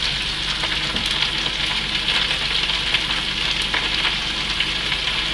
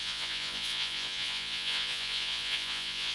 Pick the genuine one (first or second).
first